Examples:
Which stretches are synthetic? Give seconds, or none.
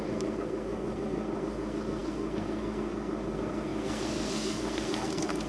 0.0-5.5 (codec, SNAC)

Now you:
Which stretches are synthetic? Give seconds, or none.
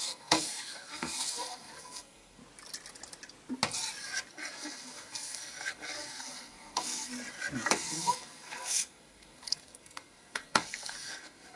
0.0-2.4 (codec, SNAC); 4.3-7.1; 7.7-11.6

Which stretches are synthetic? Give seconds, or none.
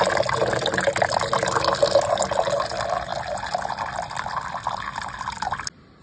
none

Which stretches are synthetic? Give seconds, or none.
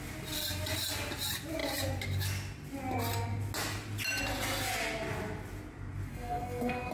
6.1-6.9 (codec, SNAC)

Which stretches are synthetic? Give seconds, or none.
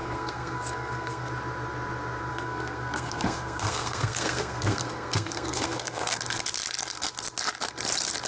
0.0-1.3 (codec, SNAC); 2.3-6.2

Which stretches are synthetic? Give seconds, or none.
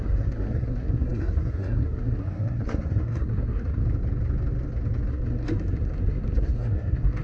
0.0-3.8 (codec, SNAC); 5.1-7.2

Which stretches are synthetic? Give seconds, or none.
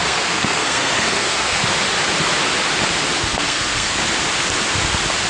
0.0-1.6 (codec, SNAC); 3.2-4.0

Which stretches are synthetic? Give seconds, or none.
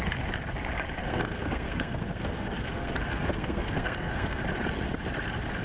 1.0-4.4 (codec, SNAC)